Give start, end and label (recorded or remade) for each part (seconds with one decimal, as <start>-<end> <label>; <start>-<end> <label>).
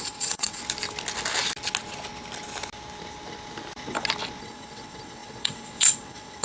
0.0-0.6 remade; 0.6-4.4 recorded; 4.4-6.4 remade